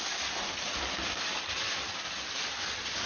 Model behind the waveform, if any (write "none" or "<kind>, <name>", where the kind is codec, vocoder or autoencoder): none